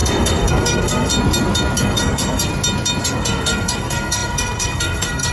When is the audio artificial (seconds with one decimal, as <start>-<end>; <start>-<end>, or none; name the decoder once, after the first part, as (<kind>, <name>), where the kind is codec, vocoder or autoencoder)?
0.0-1.1 (codec, SNAC); 1.8-2.5; 3.0-5.3